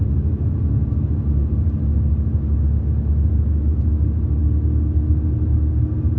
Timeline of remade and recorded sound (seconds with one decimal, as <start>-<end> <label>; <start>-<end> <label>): 0.0-6.2 recorded